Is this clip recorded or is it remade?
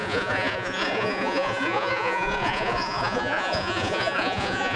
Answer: remade